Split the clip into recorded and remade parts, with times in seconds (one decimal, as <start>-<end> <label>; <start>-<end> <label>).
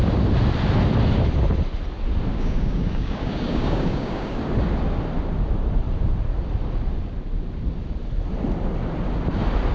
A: 0.0-2.3 recorded; 2.3-4.4 remade; 4.4-9.7 recorded